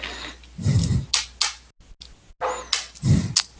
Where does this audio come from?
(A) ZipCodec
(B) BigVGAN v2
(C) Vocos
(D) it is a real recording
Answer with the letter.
D